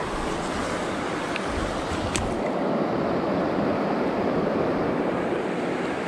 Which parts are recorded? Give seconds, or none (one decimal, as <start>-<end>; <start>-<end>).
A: 0.0-6.1